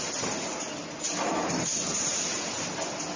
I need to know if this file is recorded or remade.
recorded